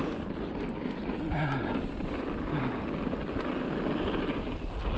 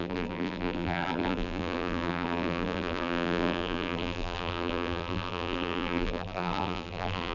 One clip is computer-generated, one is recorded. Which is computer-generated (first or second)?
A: second